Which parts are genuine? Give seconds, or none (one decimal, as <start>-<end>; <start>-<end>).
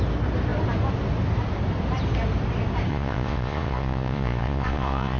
0.0-2.9